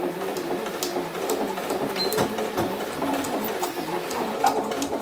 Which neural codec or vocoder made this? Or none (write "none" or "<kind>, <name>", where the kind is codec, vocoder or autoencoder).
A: none